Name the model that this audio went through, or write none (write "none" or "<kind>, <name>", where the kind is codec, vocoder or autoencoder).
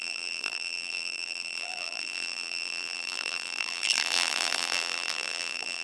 vocoder, BigVGAN v2